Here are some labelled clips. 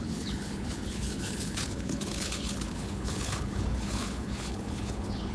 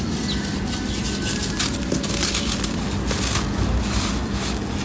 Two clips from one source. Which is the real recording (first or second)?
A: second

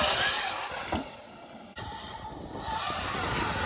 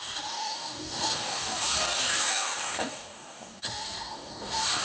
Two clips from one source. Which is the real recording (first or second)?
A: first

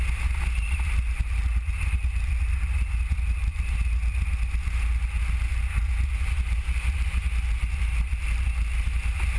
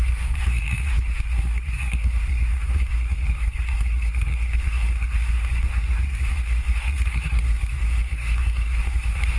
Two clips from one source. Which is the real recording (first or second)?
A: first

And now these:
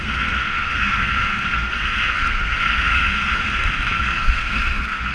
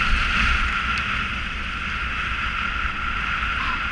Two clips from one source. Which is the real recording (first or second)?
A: second